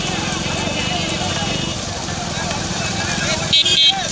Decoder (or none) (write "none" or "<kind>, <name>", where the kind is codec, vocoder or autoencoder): none